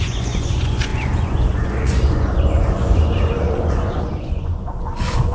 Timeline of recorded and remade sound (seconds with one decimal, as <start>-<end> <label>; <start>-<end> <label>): 0.0-5.3 remade